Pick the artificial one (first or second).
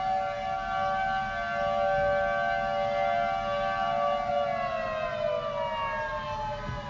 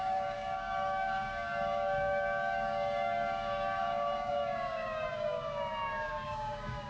second